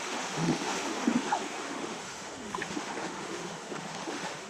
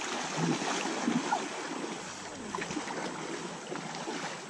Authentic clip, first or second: second